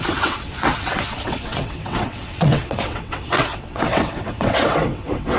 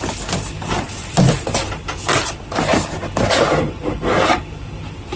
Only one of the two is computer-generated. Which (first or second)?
first